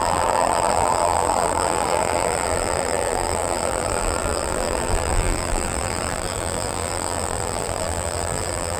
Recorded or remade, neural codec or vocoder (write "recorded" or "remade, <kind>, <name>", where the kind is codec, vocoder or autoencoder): remade, vocoder, BigVGAN v2